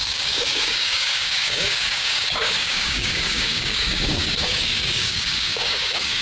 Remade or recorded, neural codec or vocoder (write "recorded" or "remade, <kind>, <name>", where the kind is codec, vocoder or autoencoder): remade, codec, DAC